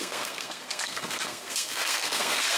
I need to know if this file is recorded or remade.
remade